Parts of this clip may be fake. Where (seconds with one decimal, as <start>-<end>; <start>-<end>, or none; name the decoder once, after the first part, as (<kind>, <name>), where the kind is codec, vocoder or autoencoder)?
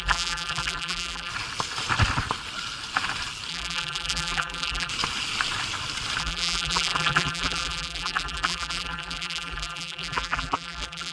0.0-1.3 (vocoder, BigVGAN v2); 3.5-4.9; 6.2-11.1